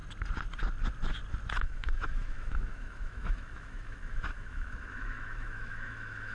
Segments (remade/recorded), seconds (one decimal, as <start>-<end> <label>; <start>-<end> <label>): 0.0-1.6 recorded; 1.6-6.3 remade